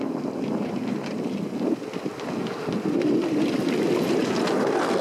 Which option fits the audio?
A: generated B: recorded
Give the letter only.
B